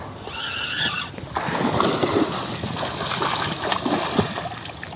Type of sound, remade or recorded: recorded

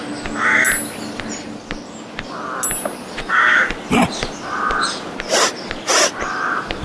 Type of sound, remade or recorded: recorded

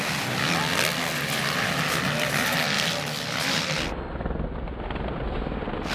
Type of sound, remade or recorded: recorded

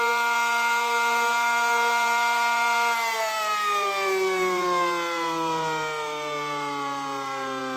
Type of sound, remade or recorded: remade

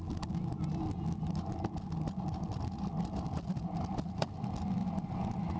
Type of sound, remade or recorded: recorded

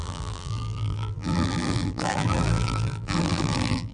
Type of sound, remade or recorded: remade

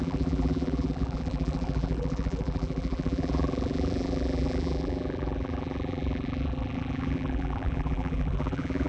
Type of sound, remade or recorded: remade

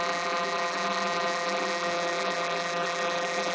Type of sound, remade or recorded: remade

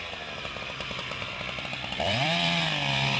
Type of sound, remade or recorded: remade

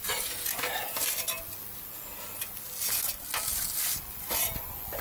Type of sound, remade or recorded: recorded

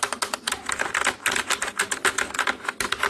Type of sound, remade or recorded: recorded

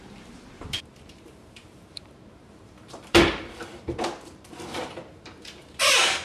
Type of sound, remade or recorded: remade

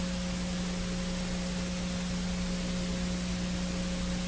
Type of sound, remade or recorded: recorded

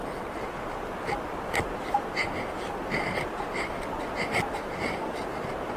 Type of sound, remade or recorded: recorded